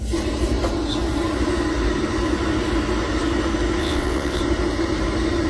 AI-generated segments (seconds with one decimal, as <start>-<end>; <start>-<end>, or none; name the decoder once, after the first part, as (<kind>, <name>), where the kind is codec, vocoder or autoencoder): 3.8-4.4 (vocoder, WaveNeXt)